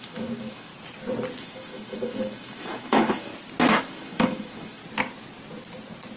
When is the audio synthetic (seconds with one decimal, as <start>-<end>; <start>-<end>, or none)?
0.0-0.7; 1.4-3.3; 3.8-4.8